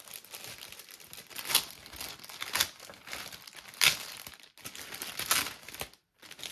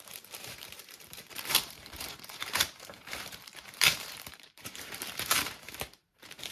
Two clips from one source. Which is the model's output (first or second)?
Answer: second